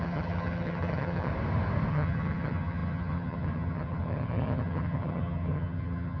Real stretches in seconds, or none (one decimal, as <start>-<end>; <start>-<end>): 1.3-1.9